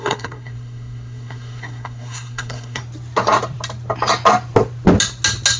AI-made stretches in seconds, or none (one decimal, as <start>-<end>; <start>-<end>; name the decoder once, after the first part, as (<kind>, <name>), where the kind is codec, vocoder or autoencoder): 0.0-2.8 (codec, SNAC)